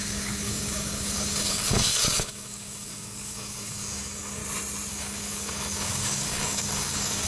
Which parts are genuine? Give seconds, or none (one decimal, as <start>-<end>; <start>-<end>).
4.4-4.9